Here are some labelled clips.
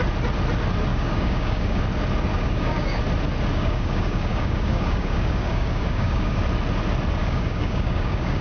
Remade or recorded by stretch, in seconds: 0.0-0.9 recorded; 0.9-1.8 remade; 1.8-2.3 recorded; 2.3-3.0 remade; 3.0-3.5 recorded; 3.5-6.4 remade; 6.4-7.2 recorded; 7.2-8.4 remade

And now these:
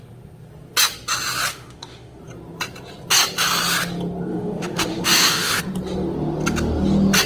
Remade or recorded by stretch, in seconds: 0.0-1.5 recorded; 1.5-2.2 remade; 2.2-4.3 recorded; 4.3-5.6 remade; 5.6-7.3 recorded

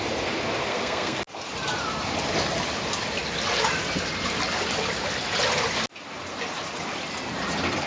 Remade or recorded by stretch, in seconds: 0.0-0.7 recorded; 0.7-1.2 remade; 1.2-7.9 recorded

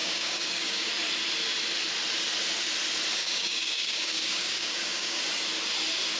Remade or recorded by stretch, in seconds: 0.0-0.9 remade; 0.9-3.2 recorded; 3.2-5.2 remade; 5.2-6.2 recorded

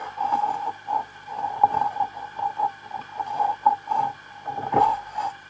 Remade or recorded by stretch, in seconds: 0.0-0.7 recorded; 0.7-1.3 remade; 1.3-4.6 recorded; 4.6-5.5 remade

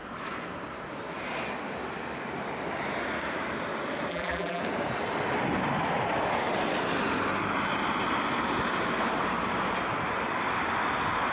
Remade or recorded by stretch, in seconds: 0.0-4.1 recorded; 4.1-4.6 remade; 4.6-11.3 recorded